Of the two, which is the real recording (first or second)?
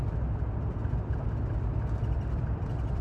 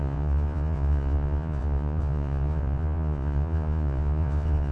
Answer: first